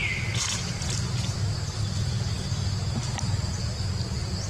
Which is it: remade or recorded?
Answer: recorded